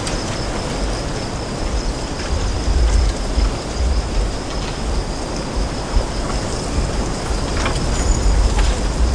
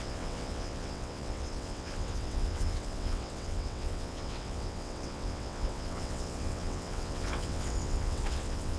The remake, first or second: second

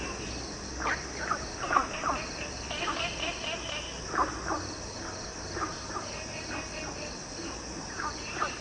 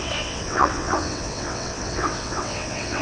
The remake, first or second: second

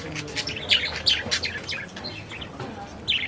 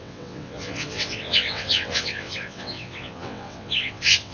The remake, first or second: second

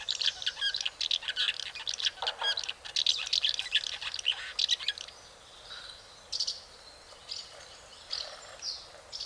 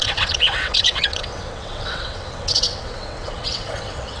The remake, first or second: second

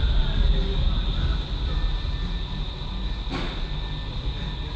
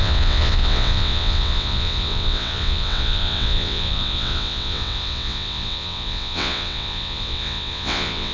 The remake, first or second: second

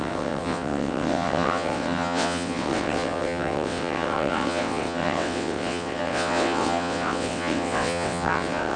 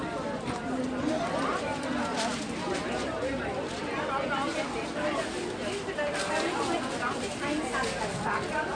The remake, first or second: first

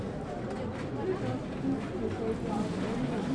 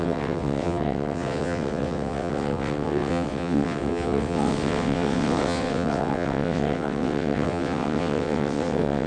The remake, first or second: second